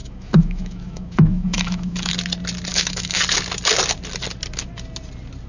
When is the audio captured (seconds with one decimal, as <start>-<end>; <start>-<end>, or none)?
2.1-2.7; 3.2-5.5